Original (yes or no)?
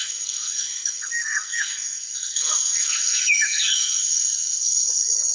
no